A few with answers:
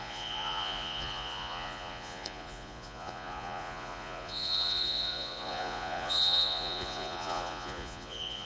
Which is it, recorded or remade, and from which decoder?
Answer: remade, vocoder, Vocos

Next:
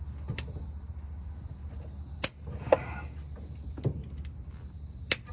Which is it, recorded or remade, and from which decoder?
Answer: recorded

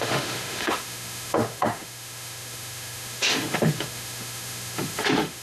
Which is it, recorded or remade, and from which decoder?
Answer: remade, autoencoder, DAC-VAE